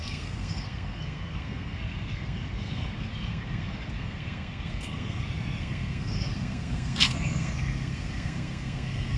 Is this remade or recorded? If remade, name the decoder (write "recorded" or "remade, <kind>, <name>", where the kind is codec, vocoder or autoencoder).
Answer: remade, codec, SNAC